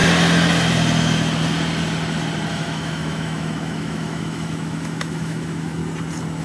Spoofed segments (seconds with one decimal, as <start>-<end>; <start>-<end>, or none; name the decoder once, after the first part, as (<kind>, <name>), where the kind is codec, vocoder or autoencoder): 2.5-5.8 (autoencoder, DAC-VAE)

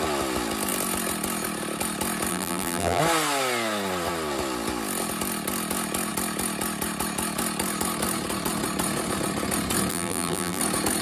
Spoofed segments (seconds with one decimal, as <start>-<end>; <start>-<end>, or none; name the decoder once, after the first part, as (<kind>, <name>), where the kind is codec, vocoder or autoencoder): 2.3-3.0 (vocoder, BigVGAN v2); 9.9-10.6